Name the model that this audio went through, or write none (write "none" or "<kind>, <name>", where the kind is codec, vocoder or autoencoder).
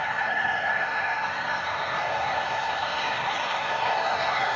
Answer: codec, SNAC